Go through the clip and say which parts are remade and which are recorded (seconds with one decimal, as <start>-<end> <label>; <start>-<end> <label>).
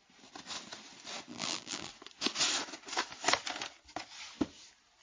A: 0.0-1.3 recorded; 1.3-1.9 remade; 1.9-5.0 recorded